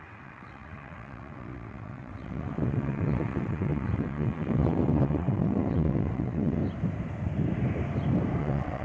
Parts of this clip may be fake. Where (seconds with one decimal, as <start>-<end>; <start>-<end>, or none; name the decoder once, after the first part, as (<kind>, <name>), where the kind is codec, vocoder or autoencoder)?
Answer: 0.0-6.6 (vocoder, WaveNeXt); 8.4-8.8